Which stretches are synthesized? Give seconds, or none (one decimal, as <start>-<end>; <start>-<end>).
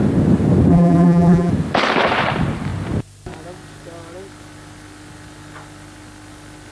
0.7-1.5